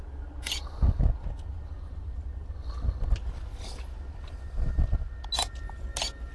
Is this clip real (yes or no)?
yes